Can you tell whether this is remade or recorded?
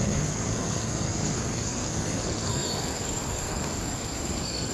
remade